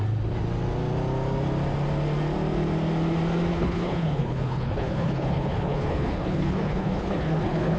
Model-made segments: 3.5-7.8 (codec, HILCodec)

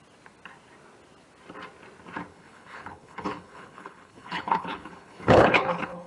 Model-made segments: 2.3-6.1 (codec, HILCodec)

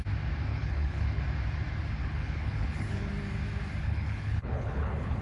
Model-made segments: 0.5-1.2 (codec, HILCodec); 2.0-3.1; 3.8-5.2

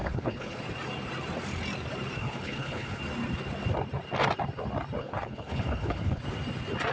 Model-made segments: 0.0-0.6 (codec, HILCodec); 2.2-3.0; 5.0-6.2

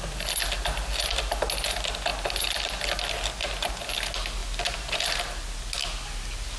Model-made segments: none